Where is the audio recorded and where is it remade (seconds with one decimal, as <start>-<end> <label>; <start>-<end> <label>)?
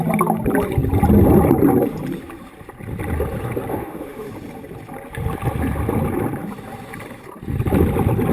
0.0-3.7 recorded; 3.7-4.3 remade; 4.3-8.3 recorded